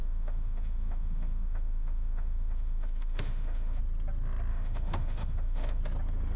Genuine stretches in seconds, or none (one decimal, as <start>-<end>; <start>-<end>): 3.8-4.5; 5.8-6.4